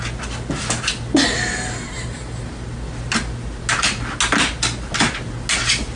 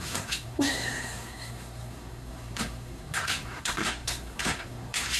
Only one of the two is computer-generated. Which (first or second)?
second